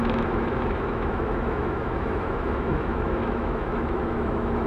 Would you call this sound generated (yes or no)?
yes